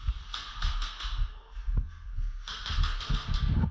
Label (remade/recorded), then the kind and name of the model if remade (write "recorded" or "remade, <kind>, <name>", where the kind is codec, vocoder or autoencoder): remade, codec, SNAC